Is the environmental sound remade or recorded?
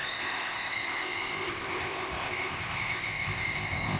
remade